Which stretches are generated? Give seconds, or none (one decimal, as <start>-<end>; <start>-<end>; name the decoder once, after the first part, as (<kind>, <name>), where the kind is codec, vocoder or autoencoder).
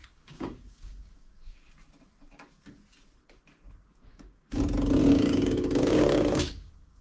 0.0-1.6 (codec, DAC); 4.1-4.6; 5.0-7.0